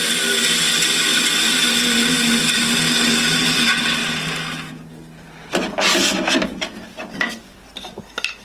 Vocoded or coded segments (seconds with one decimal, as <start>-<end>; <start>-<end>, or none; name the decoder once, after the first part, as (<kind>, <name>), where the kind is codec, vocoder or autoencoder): none